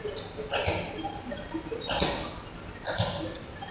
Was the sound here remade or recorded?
recorded